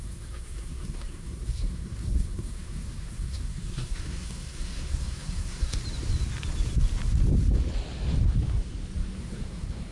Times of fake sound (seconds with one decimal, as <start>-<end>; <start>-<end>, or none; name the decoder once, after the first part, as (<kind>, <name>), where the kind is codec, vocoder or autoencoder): 0.0-5.8 (codec, SNAC); 9.2-9.9